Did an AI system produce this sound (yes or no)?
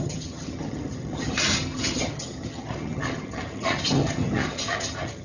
yes